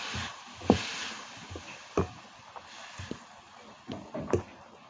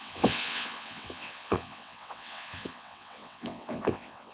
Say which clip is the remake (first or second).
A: second